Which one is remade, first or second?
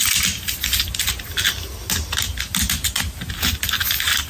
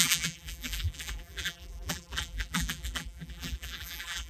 second